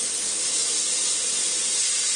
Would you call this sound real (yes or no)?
yes